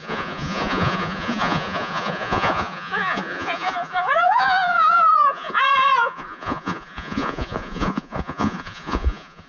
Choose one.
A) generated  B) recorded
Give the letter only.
A